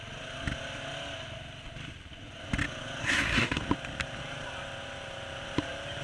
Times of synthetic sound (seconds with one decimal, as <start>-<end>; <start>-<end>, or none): 3.0-3.6